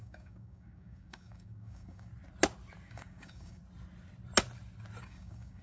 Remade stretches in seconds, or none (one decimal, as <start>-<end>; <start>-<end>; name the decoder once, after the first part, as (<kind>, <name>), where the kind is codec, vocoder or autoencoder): 0.0-2.1 (codec, DAC); 2.9-3.6; 5.0-5.6